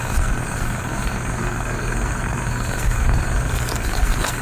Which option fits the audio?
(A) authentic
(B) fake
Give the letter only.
B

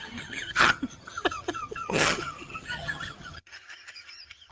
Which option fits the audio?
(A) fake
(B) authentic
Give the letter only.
A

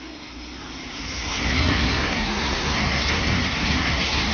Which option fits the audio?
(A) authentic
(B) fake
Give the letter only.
B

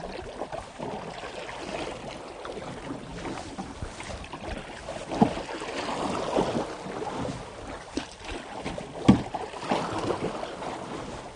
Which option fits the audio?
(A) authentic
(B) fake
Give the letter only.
A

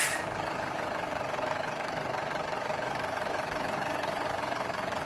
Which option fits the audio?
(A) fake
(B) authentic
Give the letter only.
A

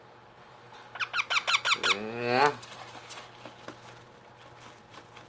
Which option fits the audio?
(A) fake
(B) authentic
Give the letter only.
B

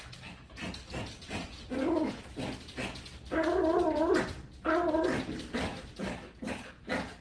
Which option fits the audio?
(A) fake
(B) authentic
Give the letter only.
B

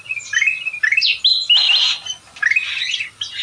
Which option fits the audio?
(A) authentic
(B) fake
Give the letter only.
A